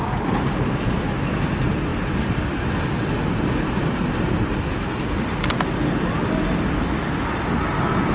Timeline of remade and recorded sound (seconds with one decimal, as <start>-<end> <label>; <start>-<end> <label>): 0.0-8.1 recorded